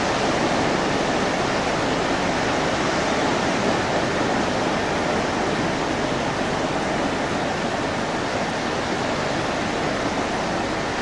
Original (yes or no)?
yes